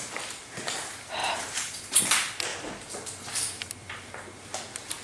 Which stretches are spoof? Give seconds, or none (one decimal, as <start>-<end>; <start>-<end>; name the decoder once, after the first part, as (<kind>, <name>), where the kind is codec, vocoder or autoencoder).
1.2-2.0 (vocoder, BigVGAN v2)